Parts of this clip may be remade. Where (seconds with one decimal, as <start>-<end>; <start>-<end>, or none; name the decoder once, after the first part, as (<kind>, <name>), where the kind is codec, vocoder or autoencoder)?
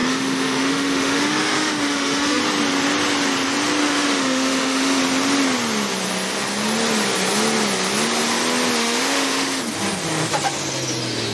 0.0-2.4 (autoencoder, DAC-VAE); 3.8-5.0; 8.8-9.6